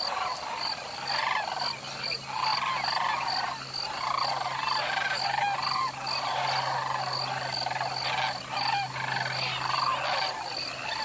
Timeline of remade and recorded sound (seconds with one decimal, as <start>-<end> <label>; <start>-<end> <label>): 0.0-11.0 recorded